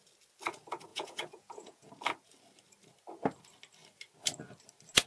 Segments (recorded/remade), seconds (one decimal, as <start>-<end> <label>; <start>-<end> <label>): 0.0-0.9 recorded; 0.9-1.9 remade; 1.9-5.1 recorded